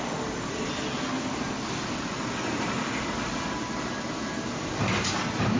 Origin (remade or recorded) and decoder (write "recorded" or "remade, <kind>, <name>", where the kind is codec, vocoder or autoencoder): recorded